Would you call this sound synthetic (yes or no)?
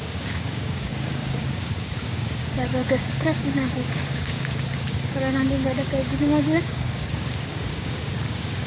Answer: yes